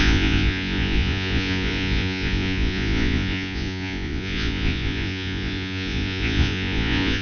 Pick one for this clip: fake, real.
fake